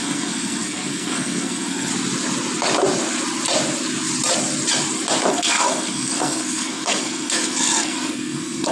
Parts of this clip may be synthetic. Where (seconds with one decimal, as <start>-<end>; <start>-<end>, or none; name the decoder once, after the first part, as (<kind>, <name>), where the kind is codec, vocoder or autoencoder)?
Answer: 0.0-1.9 (codec, SNAC); 5.3-8.7